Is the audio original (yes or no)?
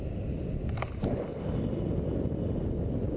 yes